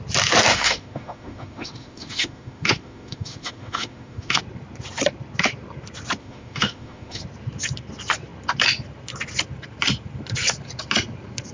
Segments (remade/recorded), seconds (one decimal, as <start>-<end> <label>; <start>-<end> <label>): 0.0-0.5 recorded; 0.5-4.4 remade; 4.4-6.2 recorded; 6.2-7.2 remade; 7.2-11.5 recorded